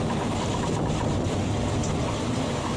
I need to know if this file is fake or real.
real